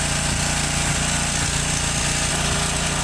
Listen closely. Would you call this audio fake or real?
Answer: real